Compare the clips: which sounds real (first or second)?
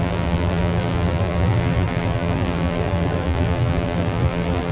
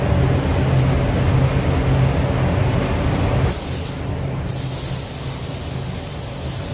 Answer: second